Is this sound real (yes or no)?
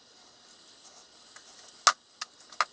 yes